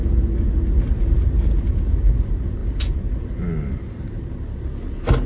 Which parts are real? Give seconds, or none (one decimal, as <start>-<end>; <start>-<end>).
0.0-5.3